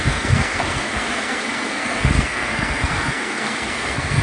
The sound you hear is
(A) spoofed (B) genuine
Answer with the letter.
A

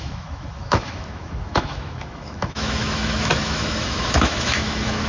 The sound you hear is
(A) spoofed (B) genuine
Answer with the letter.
A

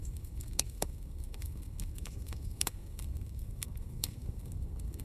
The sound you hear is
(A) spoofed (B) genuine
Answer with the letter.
A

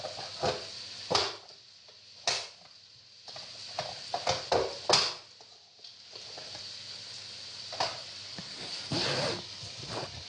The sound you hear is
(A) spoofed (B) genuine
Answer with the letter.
B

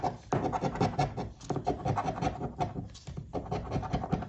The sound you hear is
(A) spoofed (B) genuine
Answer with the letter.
B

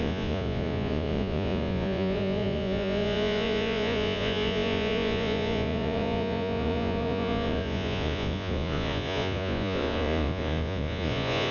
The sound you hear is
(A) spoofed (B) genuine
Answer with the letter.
A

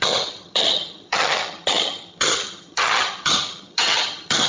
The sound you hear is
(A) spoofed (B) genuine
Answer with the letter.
A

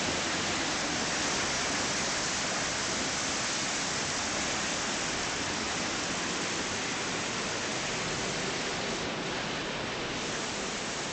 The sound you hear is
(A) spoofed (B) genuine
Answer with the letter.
B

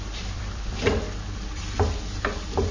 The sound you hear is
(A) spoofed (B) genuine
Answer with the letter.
A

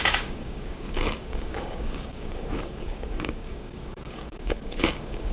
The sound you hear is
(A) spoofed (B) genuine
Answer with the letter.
A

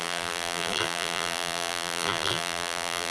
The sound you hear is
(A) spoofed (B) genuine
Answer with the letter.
A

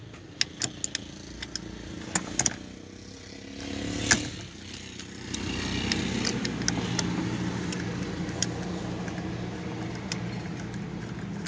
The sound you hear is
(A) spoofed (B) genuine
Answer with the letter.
B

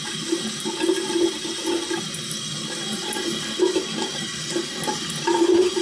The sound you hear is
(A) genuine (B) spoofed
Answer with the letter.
A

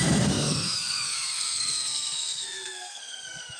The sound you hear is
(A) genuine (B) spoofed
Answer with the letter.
B